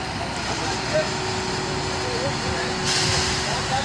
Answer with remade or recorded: recorded